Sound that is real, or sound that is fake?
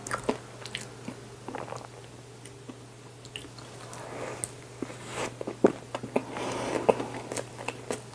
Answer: real